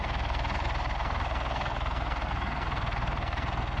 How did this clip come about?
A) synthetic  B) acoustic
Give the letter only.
A